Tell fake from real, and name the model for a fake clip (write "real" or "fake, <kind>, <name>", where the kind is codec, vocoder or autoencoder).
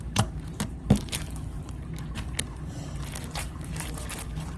fake, vocoder, BigVGAN v2